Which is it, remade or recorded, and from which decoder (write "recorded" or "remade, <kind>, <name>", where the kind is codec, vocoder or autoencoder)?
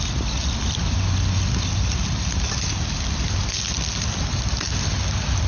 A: recorded